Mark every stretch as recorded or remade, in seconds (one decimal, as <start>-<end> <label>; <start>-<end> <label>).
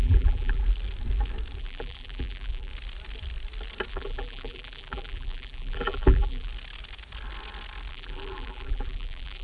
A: 0.0-0.6 remade; 0.6-1.6 recorded; 1.6-2.7 remade; 2.7-3.9 recorded; 3.9-6.5 remade; 6.5-7.9 recorded; 7.9-9.4 remade